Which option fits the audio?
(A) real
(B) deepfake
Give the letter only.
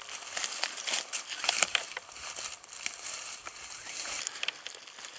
A